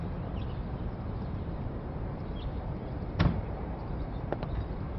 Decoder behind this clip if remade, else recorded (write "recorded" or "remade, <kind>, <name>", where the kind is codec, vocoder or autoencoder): remade, vocoder, BigVGAN v2